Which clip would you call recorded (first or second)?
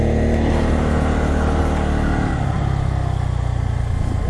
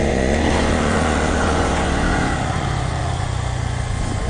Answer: first